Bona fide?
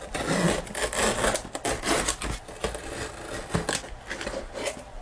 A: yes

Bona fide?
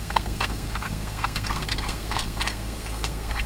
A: no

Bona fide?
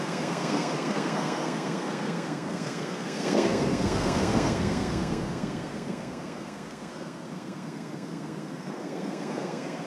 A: no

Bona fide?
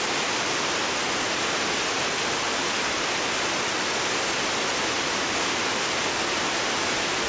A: yes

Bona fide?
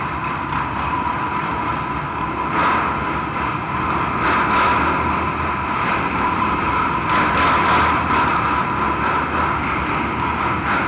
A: yes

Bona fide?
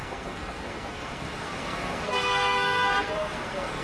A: no